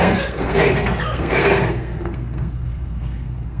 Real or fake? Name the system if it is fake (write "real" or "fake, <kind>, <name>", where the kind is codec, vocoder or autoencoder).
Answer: fake, codec, SNAC